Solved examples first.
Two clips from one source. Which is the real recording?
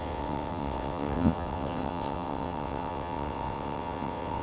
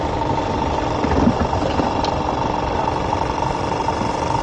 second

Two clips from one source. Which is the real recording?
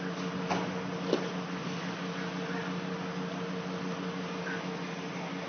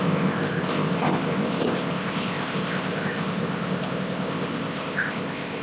first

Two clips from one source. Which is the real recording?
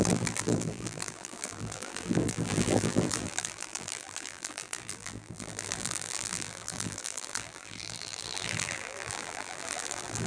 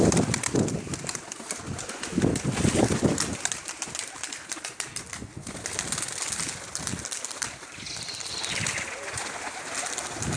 second